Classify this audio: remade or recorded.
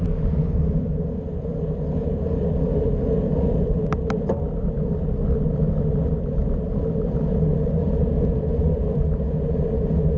recorded